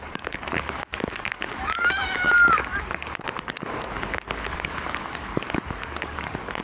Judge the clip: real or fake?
fake